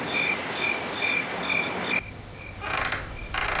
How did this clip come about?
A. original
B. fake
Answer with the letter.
A